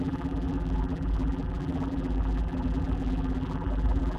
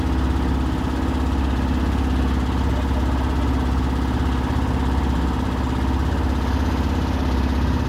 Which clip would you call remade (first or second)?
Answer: first